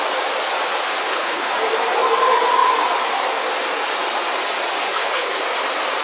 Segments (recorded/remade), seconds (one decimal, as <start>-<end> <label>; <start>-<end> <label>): 0.0-1.0 recorded; 1.0-1.5 remade; 1.5-4.9 recorded; 4.9-5.4 remade; 5.4-6.0 recorded